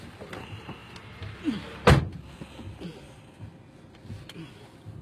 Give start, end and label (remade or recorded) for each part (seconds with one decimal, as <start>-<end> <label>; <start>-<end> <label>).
0.0-5.0 recorded